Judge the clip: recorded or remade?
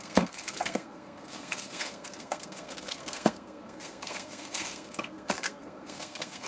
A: remade